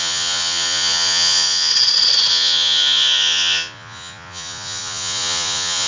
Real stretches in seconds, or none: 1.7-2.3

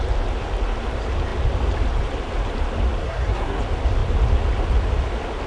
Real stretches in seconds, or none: 0.0-3.0; 3.6-5.5

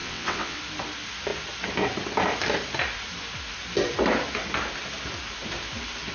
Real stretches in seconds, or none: 0.6-6.1